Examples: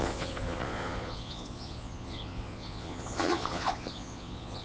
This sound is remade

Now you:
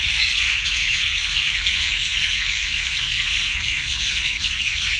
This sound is remade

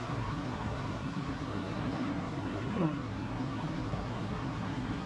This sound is remade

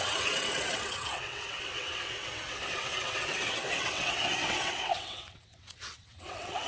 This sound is remade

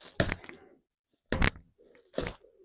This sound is recorded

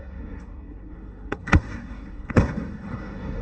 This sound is remade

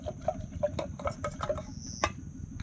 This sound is recorded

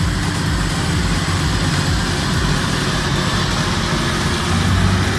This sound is recorded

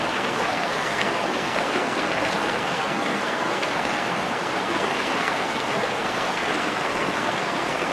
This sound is remade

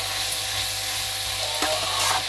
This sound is recorded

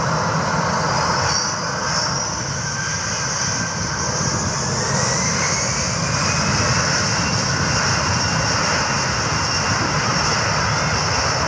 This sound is recorded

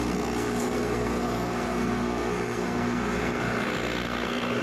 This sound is remade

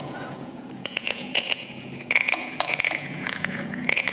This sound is remade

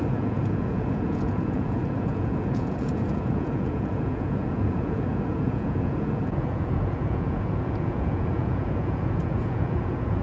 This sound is remade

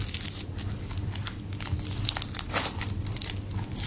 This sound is recorded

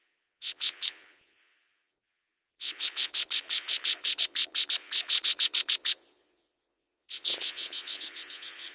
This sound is remade